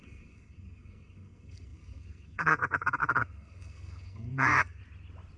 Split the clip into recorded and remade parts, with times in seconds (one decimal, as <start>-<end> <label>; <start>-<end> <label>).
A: 0.0-4.8 remade; 4.8-5.4 recorded